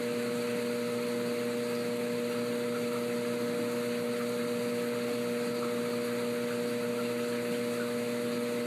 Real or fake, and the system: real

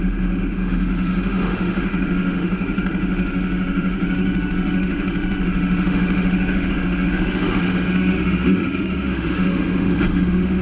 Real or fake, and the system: fake, autoencoder, DAC-VAE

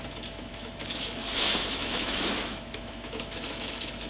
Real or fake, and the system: fake, autoencoder, DAC-VAE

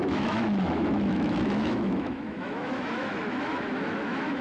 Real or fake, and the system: fake, autoencoder, DAC-VAE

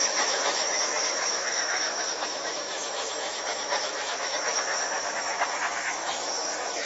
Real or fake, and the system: fake, autoencoder, DAC-VAE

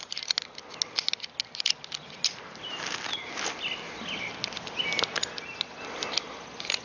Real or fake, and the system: real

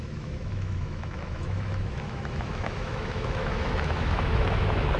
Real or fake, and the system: fake, autoencoder, DAC-VAE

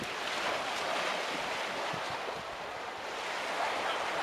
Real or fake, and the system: real